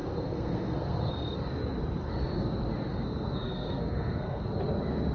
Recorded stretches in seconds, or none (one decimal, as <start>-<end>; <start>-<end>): 1.1-2.9; 4.4-5.1